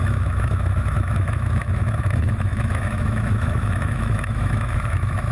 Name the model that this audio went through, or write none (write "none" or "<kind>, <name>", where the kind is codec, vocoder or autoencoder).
autoencoder, DAC-VAE